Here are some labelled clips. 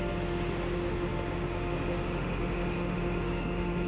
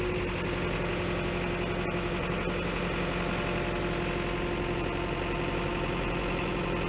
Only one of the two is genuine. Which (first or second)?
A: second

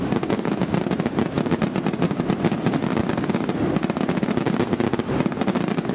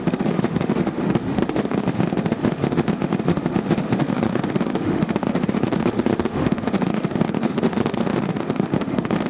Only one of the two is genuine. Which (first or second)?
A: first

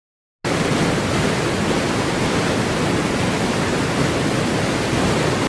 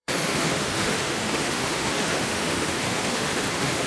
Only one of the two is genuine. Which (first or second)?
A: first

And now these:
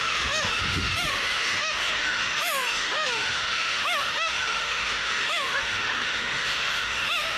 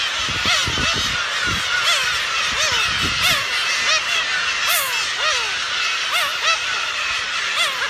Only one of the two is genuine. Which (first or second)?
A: second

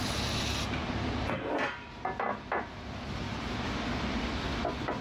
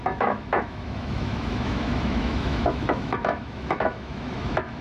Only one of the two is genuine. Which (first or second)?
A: first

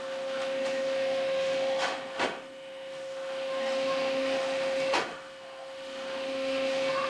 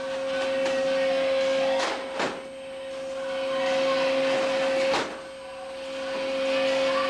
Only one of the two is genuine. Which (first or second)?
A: second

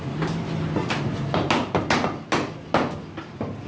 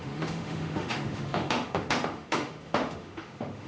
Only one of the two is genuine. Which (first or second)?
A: first